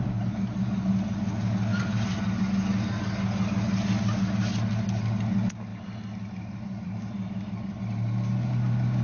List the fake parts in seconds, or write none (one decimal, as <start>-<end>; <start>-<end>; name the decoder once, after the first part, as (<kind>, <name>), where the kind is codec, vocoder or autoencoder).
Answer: 1.7-2.4 (vocoder, BigVGAN v2); 5.7-7.8